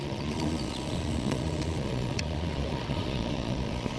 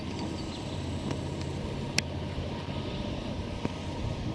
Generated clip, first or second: first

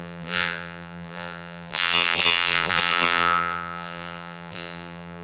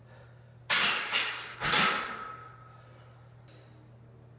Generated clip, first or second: first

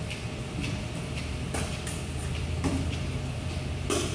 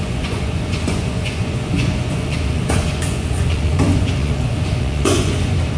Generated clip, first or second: second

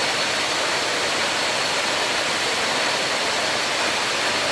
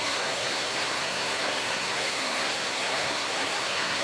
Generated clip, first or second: second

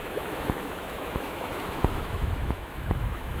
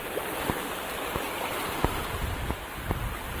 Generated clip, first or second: first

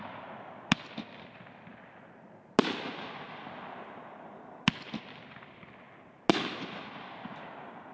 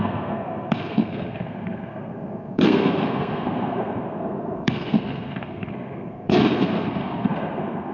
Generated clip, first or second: second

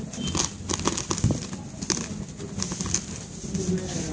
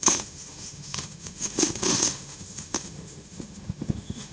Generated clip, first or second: second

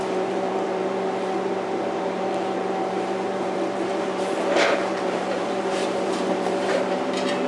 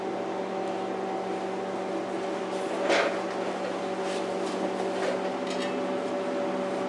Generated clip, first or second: first